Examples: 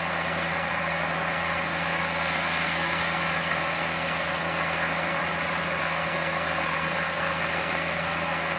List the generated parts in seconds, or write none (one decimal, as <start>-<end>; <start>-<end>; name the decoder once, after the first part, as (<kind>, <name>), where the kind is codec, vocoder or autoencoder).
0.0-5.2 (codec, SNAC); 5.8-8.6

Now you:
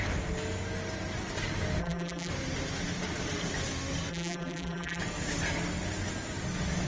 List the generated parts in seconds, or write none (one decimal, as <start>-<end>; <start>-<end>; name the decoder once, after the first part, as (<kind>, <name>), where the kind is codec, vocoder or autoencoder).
1.8-2.3 (vocoder, BigVGAN v2); 4.1-5.0

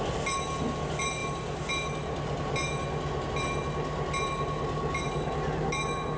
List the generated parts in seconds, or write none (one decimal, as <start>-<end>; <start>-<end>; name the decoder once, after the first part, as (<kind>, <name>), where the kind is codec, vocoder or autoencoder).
none

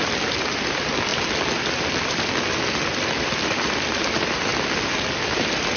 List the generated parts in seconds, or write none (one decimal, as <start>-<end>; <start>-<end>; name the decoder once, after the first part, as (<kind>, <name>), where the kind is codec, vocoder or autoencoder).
0.0-1.1 (vocoder, BigVGAN v2); 1.6-5.8